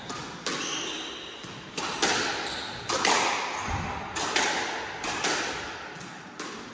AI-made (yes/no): no